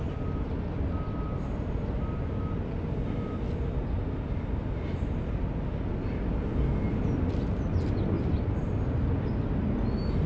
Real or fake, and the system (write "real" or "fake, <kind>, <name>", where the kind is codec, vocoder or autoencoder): real